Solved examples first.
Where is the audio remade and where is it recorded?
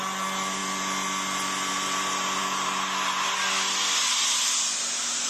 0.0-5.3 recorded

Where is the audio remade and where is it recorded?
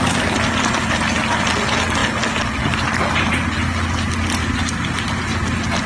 0.0-5.9 recorded